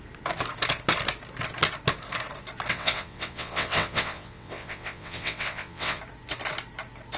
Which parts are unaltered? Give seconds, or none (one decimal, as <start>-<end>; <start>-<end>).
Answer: 0.0-2.7; 6.0-7.2